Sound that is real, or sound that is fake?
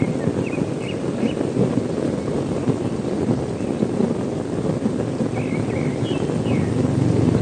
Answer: real